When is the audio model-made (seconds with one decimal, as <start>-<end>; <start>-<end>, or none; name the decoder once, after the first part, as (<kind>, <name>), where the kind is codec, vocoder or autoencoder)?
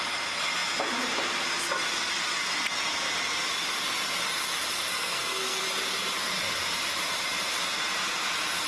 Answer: 4.9-5.6 (codec, SNAC)